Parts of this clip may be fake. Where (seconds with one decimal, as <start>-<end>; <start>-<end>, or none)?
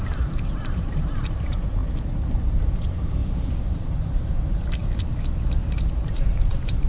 0.0-1.8; 2.7-3.2; 3.7-4.8; 5.9-6.9